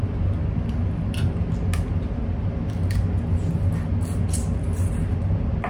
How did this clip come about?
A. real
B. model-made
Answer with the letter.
A